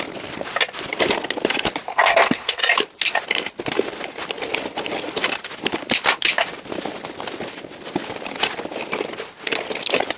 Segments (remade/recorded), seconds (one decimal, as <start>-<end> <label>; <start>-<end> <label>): 0.0-1.9 recorded; 1.9-2.6 remade; 2.6-10.2 recorded